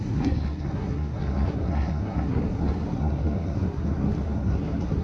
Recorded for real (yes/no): no